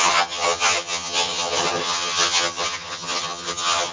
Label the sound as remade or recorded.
remade